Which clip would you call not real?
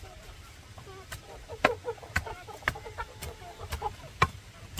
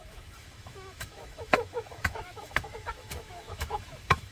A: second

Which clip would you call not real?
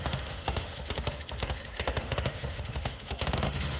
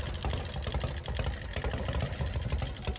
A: first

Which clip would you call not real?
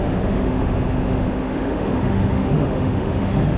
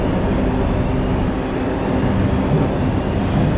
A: first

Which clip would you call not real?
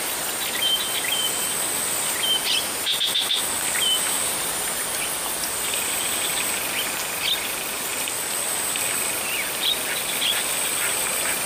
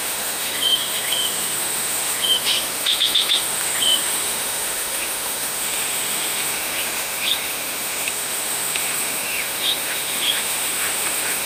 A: second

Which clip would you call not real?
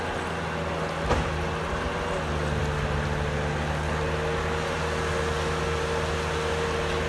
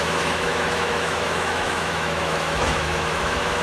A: second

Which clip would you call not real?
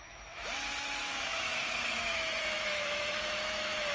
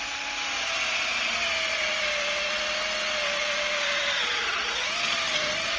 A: first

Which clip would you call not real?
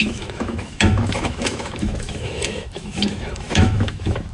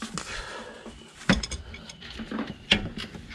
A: first